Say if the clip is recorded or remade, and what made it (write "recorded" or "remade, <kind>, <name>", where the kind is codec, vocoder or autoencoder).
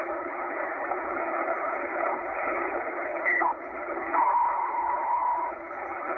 remade, codec, HILCodec